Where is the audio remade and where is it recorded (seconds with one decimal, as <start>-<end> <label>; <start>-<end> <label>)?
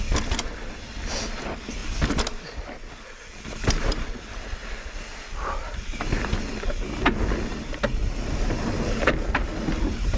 0.0-10.2 recorded